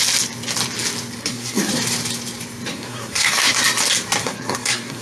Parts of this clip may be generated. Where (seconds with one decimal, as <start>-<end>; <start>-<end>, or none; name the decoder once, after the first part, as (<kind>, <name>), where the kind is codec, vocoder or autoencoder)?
1.2-1.7 (codec, SNAC); 2.7-3.5; 4.2-5.0